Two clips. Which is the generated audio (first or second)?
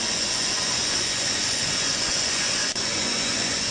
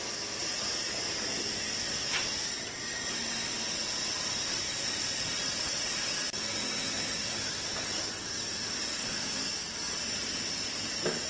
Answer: first